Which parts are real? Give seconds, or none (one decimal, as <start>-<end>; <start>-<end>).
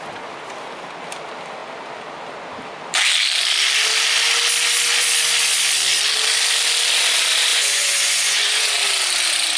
0.0-7.5; 8.7-9.6